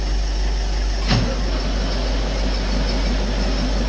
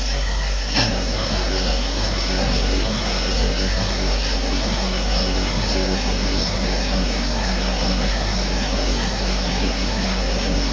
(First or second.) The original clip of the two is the first